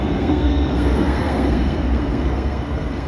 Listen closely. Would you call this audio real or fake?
fake